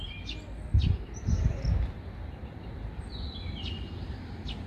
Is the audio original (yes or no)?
yes